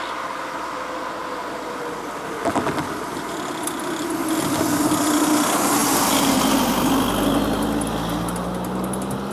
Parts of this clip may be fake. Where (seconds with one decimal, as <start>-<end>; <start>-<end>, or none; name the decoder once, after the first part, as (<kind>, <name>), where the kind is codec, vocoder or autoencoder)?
none